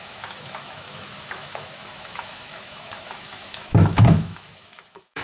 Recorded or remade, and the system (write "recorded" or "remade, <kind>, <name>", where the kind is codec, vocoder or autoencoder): remade, autoencoder, DAC-VAE